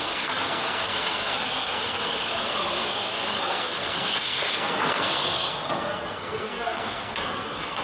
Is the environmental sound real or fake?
fake